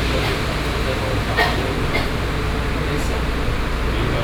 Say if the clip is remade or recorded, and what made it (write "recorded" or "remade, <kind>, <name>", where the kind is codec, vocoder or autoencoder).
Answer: recorded